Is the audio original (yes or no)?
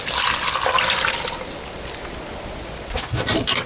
yes